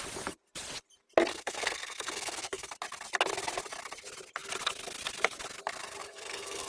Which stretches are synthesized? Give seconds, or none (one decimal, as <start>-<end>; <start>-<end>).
1.3-2.7; 6.0-6.7